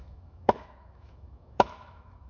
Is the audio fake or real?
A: fake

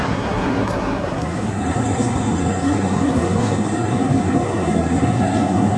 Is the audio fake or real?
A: fake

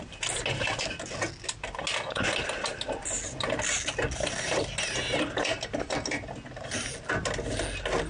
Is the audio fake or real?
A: real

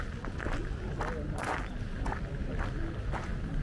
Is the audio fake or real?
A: real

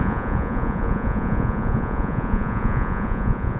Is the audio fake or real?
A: fake